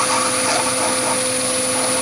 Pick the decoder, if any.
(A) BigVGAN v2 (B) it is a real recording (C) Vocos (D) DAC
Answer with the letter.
B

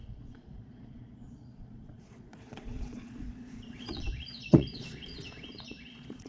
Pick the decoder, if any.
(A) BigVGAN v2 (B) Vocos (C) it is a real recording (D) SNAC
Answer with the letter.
B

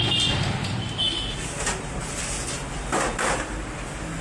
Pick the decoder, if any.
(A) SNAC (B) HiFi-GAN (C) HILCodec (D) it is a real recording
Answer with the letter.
D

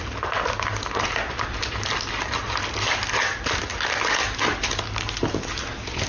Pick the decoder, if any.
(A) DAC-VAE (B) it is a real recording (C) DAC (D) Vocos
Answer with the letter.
B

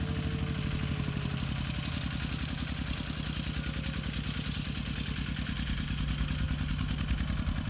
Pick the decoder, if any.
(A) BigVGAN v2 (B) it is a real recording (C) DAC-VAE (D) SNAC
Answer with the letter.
B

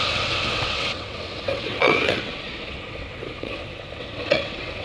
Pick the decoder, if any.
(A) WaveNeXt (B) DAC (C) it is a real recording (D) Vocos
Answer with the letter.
A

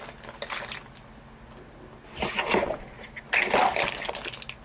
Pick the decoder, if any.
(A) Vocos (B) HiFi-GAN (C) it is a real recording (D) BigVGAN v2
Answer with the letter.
C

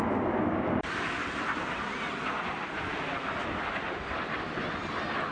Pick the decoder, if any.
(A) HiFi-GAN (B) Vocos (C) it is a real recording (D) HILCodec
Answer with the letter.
C